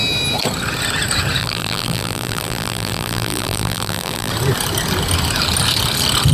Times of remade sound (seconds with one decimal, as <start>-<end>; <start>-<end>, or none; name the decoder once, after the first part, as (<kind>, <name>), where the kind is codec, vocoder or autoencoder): 1.4-4.3 (vocoder, BigVGAN v2)